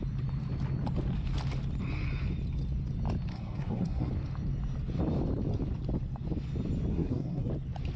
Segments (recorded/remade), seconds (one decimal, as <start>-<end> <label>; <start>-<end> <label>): 0.0-3.3 recorded; 3.3-4.1 remade; 4.1-6.9 recorded; 6.9-7.5 remade; 7.5-8.0 recorded